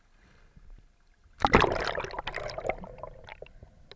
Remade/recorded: recorded